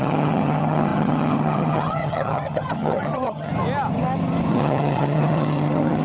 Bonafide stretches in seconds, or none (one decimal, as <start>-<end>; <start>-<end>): 3.5-4.5